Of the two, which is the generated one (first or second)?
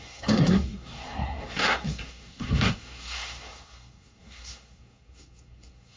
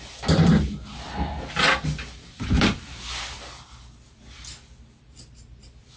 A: first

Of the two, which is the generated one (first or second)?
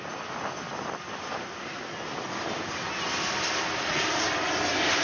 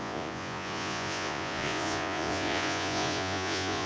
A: second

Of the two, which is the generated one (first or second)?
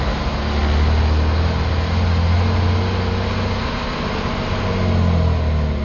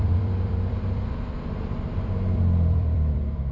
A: second